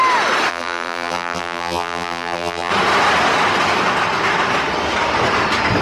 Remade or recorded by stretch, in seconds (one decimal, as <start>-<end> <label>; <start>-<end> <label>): 0.0-0.5 recorded; 0.5-2.7 remade; 2.7-5.8 recorded